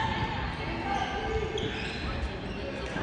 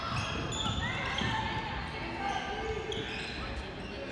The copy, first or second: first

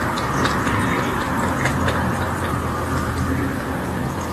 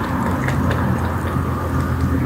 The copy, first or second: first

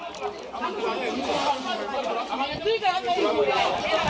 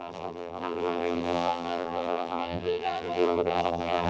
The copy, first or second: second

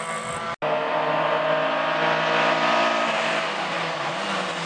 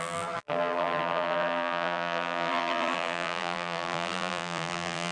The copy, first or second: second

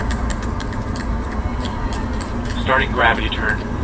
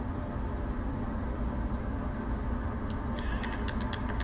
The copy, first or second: first